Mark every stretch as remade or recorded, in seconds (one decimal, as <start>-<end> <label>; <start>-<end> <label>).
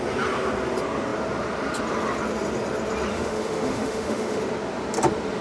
0.0-3.1 recorded; 3.1-4.4 remade; 4.4-5.4 recorded